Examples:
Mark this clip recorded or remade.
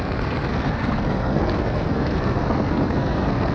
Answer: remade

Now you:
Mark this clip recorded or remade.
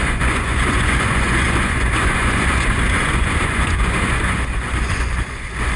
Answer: remade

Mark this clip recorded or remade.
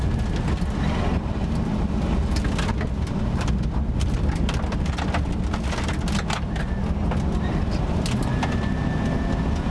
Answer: recorded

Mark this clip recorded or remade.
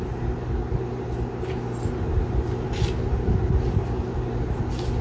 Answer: recorded